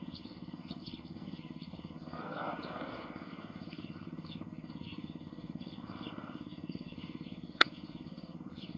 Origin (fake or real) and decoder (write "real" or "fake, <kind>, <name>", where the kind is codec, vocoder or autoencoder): fake, codec, SNAC